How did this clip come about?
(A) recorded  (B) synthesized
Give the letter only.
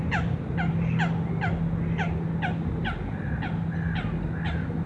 A